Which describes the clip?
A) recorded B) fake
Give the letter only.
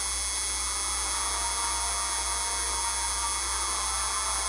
A